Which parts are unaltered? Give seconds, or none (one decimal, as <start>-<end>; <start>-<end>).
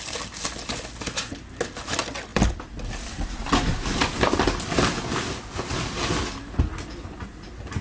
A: 0.0-7.8